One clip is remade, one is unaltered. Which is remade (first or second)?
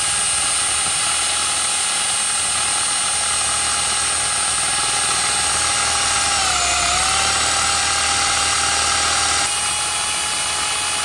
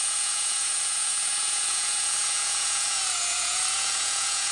second